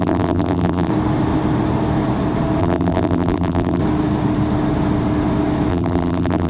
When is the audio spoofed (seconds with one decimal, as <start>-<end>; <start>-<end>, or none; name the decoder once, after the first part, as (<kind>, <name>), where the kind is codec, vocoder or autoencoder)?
0.0-0.9 (vocoder, BigVGAN v2); 2.6-3.8; 5.7-6.5